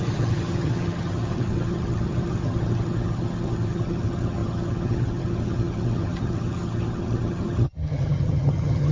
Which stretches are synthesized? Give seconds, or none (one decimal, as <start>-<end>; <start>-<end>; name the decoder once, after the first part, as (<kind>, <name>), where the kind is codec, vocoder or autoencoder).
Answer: 0.0-8.9 (vocoder, HiFi-GAN)